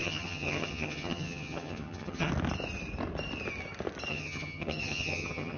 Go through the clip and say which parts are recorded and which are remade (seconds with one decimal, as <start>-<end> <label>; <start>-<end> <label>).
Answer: 0.0-2.3 remade; 2.3-4.1 recorded; 4.1-5.6 remade